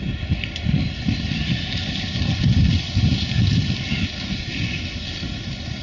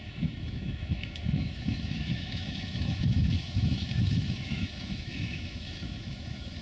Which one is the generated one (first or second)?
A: second